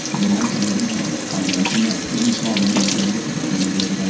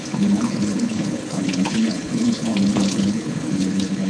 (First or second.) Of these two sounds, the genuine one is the first